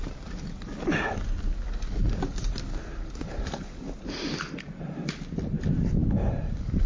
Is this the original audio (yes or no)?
yes